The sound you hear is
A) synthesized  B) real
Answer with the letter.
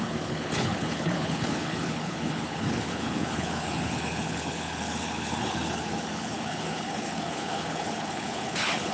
A